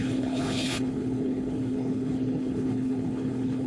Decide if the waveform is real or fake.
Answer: fake